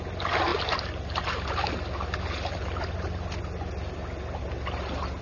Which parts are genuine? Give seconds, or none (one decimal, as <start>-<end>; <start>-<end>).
0.0-5.2